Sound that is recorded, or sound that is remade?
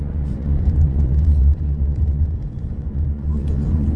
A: remade